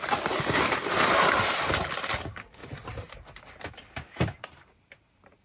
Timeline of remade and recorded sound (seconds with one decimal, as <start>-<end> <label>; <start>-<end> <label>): 0.0-2.6 remade; 2.6-3.7 recorded; 3.7-5.4 remade